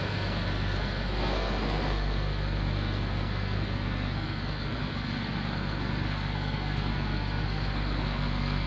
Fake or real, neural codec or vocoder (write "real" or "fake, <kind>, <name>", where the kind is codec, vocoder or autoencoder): fake, codec, SNAC